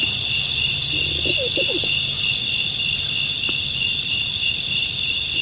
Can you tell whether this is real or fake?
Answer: real